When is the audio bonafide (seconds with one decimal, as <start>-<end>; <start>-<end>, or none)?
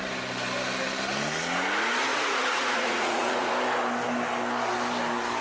0.0-2.1; 3.5-5.4